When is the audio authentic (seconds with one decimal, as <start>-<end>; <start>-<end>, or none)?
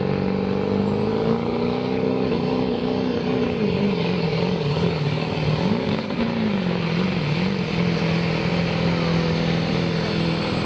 0.0-1.1; 6.2-10.7